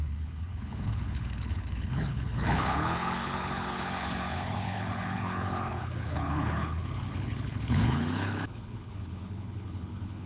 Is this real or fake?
fake